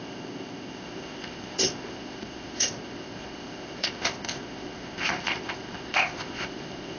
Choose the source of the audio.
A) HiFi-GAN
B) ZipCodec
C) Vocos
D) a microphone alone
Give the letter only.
B